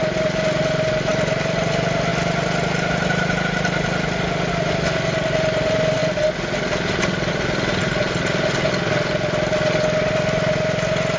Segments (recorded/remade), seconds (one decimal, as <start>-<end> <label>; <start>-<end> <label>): 0.0-11.2 recorded